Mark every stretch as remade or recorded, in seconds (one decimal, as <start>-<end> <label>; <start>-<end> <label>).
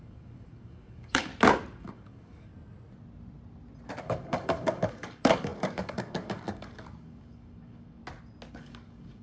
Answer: 0.0-1.3 remade; 1.3-1.8 recorded; 1.8-2.5 remade; 2.5-4.0 recorded; 4.0-8.0 remade; 8.0-8.5 recorded; 8.5-9.2 remade